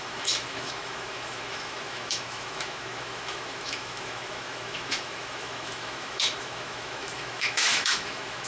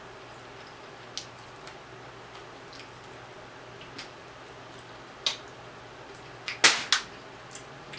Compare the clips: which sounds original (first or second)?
second